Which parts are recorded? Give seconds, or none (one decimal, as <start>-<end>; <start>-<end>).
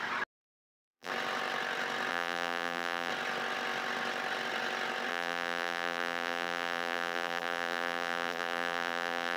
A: 0.0-0.4; 1.1-2.1; 3.1-5.1